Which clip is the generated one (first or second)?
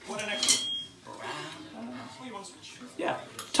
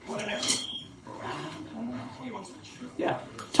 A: second